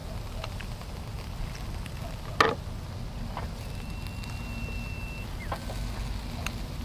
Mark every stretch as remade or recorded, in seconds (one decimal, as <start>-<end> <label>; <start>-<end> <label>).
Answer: 0.0-6.8 recorded